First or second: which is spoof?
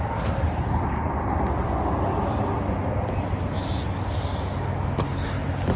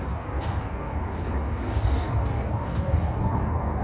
second